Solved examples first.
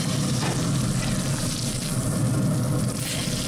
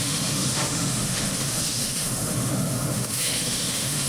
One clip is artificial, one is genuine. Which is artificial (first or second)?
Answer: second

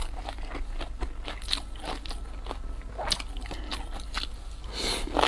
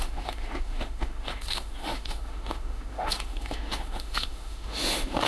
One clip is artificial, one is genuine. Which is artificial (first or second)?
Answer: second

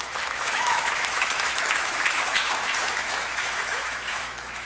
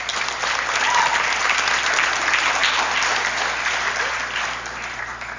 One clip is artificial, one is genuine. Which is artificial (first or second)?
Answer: first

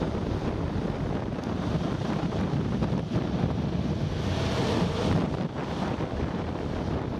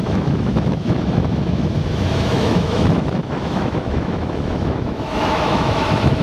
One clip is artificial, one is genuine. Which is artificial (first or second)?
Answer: second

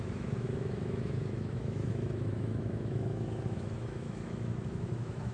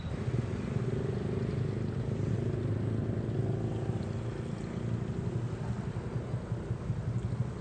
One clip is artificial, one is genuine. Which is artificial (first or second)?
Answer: first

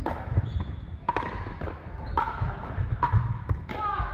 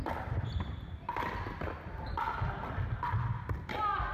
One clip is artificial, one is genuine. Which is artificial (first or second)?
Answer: first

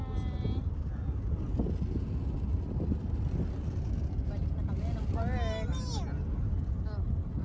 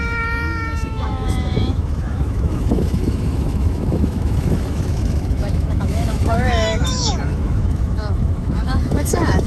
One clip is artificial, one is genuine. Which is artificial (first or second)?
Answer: second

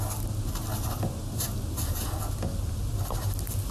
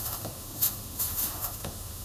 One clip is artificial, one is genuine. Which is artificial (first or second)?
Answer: second